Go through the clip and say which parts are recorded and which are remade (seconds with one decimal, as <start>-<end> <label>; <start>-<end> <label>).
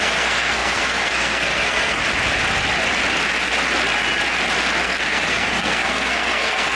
0.0-2.0 remade; 2.0-4.8 recorded; 4.8-6.8 remade